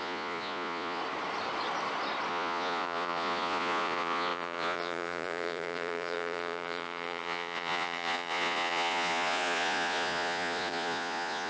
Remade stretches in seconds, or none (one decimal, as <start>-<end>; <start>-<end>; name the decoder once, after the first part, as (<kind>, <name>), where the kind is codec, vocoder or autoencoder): 0.0-1.0 (vocoder, Vocos); 2.3-11.5